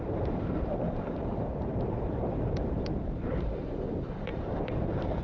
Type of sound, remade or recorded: remade